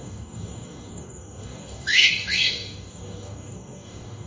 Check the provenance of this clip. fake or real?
fake